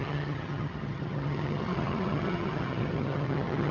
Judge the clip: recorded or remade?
remade